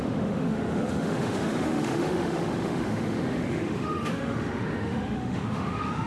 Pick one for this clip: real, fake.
fake